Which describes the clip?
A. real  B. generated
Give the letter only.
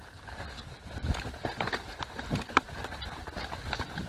B